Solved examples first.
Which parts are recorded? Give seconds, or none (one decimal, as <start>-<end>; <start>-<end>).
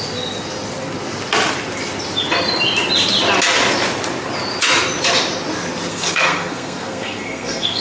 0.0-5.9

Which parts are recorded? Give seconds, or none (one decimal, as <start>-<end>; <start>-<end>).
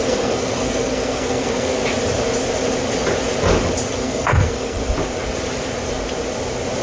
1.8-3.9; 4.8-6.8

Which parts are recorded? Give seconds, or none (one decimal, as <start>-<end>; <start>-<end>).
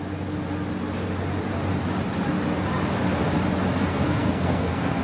0.0-3.9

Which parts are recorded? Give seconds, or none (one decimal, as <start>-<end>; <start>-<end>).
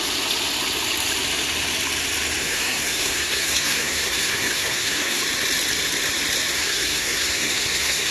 0.0-2.4; 5.2-6.5